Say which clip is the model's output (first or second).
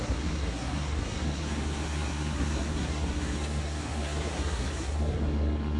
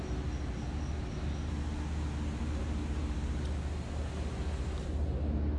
first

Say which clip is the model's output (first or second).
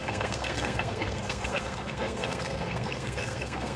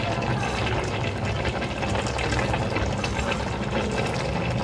first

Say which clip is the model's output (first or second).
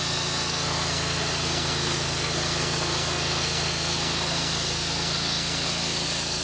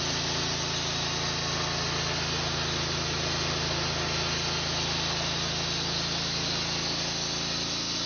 first